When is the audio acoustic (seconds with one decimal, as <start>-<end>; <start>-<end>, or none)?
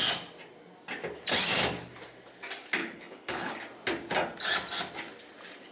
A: 0.0-2.8; 3.6-5.7